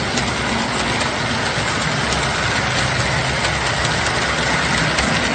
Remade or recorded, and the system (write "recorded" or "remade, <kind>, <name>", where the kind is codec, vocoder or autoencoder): recorded